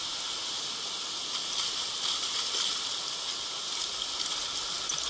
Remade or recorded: recorded